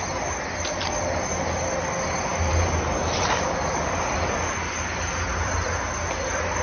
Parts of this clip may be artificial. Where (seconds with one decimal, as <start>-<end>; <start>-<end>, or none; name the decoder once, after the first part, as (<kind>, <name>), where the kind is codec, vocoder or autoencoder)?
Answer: none